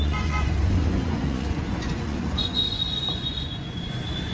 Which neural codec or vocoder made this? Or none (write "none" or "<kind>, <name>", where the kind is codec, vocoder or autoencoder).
vocoder, Vocos